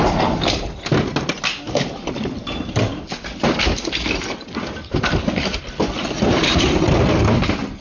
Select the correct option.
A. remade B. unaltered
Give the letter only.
B